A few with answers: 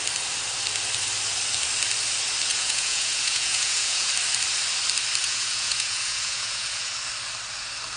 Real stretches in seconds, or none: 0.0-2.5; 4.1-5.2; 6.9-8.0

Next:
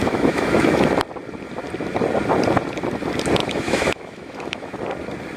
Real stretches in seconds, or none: 0.9-3.4; 4.8-5.4

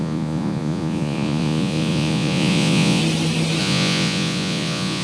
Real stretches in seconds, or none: 3.0-3.6

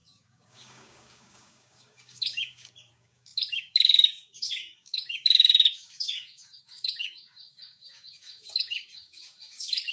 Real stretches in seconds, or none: none